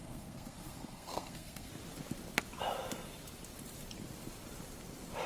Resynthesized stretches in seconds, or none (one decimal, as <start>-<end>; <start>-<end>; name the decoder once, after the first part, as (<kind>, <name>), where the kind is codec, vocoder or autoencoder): 0.0-1.7 (codec, SNAC)